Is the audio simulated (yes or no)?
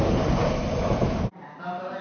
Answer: no